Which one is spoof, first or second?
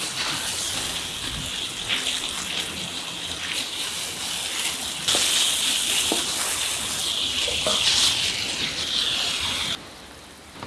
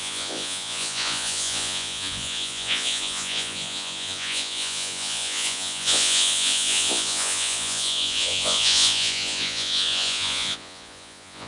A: second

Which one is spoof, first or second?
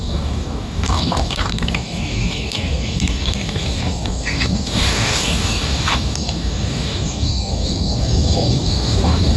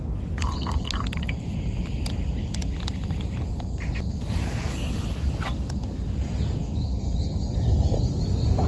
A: first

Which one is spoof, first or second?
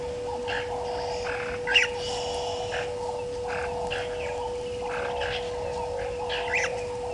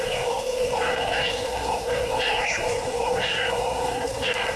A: second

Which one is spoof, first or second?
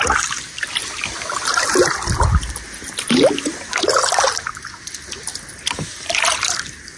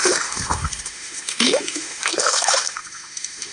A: second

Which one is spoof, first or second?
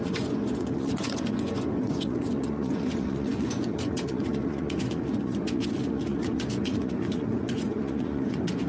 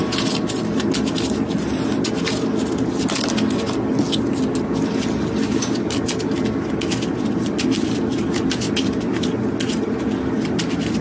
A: first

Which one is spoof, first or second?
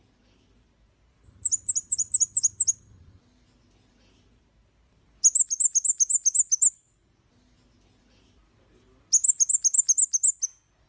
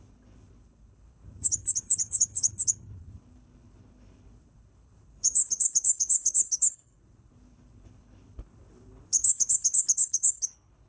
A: second